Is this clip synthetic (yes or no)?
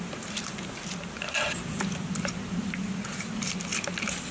no